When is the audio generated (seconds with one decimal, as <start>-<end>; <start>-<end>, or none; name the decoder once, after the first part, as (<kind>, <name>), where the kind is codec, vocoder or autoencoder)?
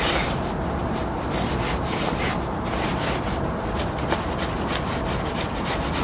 none